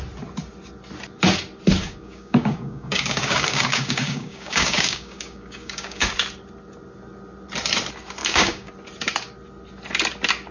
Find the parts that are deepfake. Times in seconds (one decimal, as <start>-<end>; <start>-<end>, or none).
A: 1.8-6.1; 8.2-8.7